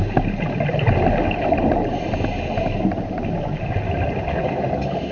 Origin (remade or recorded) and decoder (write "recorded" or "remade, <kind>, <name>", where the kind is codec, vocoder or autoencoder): recorded